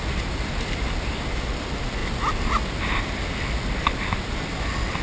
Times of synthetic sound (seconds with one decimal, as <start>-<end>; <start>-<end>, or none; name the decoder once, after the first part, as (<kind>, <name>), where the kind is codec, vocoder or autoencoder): none